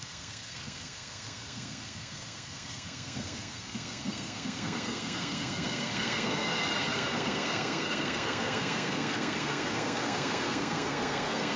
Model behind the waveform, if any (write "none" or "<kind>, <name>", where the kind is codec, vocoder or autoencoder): codec, SNAC